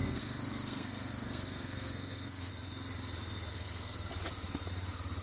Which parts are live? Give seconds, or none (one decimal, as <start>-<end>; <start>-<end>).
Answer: 2.5-3.5; 4.1-5.2